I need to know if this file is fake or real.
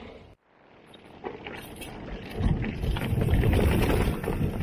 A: real